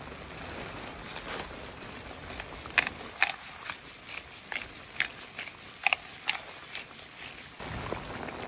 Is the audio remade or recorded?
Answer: recorded